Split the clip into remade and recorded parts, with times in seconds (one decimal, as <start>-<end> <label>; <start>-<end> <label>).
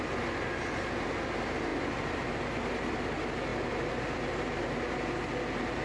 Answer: 0.0-1.7 recorded; 1.7-2.3 remade; 2.3-5.8 recorded